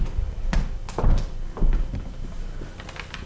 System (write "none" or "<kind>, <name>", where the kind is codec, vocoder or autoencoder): none